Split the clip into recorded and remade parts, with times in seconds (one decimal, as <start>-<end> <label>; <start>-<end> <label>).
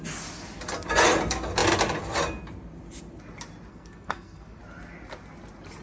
0.0-3.7 recorded; 3.7-4.6 remade; 4.6-5.8 recorded